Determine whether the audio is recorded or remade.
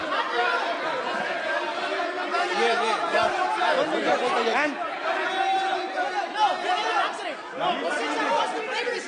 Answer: recorded